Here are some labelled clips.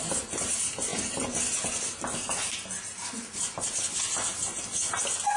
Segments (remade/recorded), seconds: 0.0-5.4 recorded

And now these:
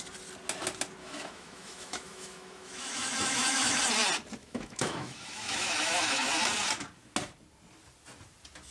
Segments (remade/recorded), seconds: 0.0-1.0 recorded; 1.0-3.8 remade; 3.8-4.4 recorded; 4.4-6.3 remade; 6.3-8.7 recorded

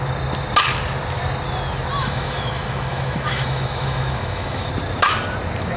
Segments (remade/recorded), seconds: 0.0-2.0 recorded; 2.0-4.7 remade; 4.7-5.8 recorded

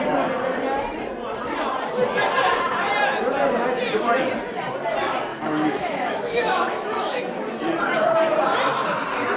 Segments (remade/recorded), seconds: 0.0-5.3 recorded; 5.3-7.2 remade; 7.2-9.4 recorded